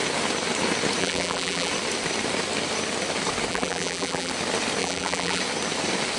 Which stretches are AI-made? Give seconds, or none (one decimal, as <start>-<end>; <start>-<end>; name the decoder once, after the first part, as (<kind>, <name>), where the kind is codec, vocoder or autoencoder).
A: 1.0-1.7 (vocoder, BigVGAN v2); 3.5-4.3; 4.8-5.4

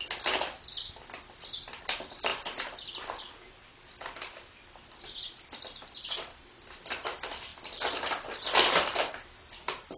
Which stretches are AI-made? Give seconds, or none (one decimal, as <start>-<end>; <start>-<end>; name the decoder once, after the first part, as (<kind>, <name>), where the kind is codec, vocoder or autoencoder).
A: 2.3-6.8 (vocoder, BigVGAN v2)

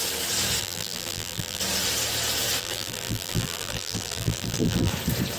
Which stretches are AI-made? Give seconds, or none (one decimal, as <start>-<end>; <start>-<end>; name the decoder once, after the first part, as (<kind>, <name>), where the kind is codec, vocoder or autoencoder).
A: 0.6-1.6 (vocoder, BigVGAN v2); 2.6-4.9

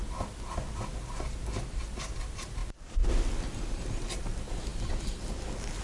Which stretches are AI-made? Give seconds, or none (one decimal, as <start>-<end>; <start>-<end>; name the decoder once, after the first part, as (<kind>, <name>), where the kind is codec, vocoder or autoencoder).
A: 0.0-1.3 (vocoder, BigVGAN v2); 2.6-4.2; 4.7-5.8

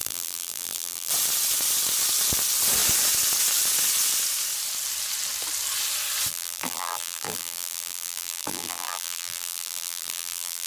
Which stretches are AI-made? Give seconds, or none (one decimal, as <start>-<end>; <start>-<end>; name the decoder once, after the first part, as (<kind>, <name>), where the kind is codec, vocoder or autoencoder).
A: 0.0-1.1 (vocoder, BigVGAN v2); 6.3-10.7

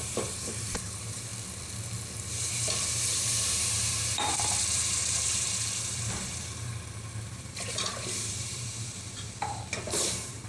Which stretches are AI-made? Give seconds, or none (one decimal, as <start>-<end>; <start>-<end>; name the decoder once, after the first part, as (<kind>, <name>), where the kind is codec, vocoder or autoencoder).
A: 0.0-1.3 (vocoder, BigVGAN v2); 2.3-10.5

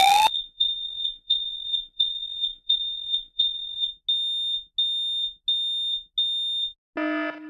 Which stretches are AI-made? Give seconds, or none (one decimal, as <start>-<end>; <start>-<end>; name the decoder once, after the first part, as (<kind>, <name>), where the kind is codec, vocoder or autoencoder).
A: 0.0-3.9 (vocoder, BigVGAN v2)